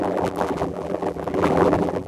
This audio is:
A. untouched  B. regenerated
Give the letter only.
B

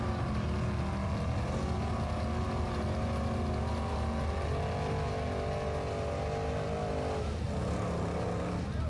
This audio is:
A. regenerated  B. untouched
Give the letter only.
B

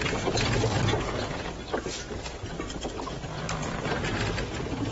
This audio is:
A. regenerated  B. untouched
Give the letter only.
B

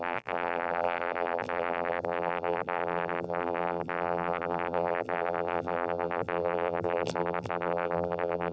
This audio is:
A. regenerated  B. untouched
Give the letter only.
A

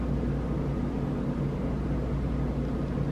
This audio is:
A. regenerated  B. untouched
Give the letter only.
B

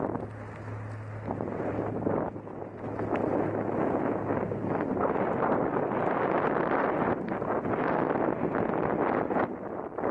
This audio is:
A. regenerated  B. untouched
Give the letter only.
B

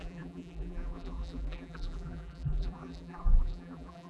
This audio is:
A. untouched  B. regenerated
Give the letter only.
B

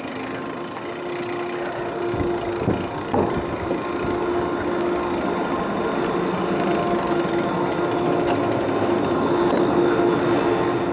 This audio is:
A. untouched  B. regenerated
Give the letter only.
A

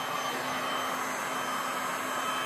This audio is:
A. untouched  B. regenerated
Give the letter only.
A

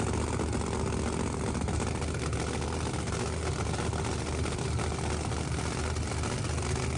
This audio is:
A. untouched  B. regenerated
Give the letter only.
A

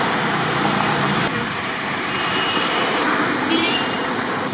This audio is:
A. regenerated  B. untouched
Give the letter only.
A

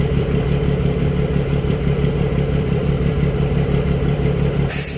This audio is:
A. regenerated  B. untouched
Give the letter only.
A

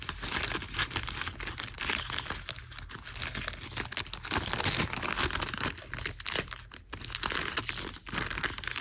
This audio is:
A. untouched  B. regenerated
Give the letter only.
A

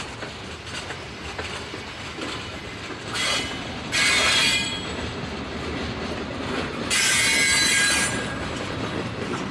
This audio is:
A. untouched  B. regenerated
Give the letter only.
B